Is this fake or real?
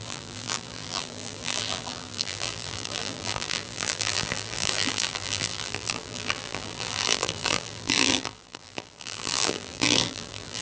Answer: fake